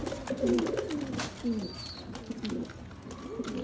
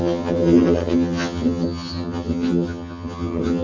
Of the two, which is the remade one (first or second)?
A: second